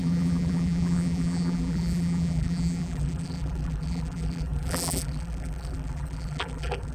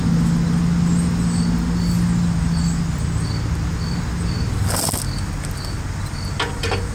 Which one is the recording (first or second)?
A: second